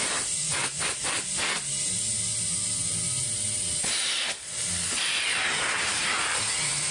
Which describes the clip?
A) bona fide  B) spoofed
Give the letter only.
A